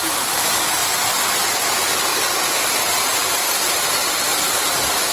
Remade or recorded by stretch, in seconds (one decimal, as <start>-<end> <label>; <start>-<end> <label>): 0.0-5.1 recorded